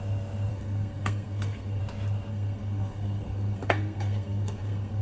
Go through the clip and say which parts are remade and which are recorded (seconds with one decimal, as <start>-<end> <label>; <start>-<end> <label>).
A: 0.0-0.5 recorded; 0.5-1.8 remade; 1.8-2.3 recorded; 2.3-5.0 remade